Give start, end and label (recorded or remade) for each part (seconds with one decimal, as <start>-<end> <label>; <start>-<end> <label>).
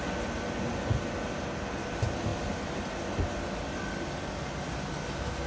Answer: 0.0-5.5 recorded